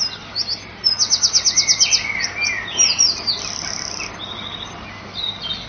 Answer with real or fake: real